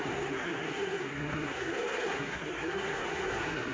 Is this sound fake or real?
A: fake